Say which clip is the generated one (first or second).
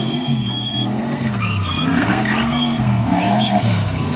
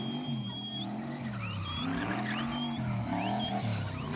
first